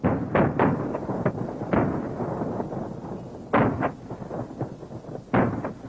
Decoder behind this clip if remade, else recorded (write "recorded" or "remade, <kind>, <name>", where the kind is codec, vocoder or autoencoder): recorded